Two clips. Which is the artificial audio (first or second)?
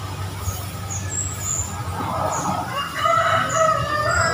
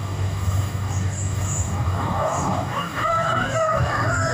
second